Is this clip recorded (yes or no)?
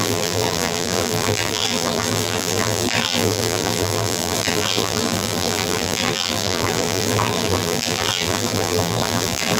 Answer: no